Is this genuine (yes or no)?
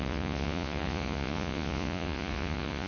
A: no